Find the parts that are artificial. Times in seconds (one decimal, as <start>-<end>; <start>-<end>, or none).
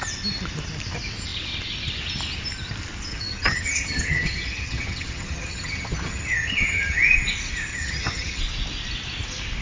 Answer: 3.1-7.0; 7.7-8.4